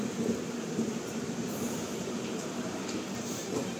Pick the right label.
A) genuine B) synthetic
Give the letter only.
B